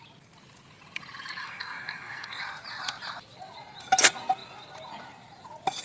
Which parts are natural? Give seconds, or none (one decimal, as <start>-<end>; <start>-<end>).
0.0-1.4; 2.4-5.8